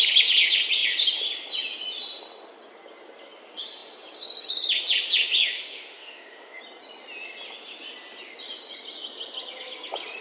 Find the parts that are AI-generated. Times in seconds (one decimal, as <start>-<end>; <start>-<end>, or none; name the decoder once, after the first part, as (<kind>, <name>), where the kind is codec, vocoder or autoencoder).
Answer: 5.4-6.6 (autoencoder, DAC-VAE)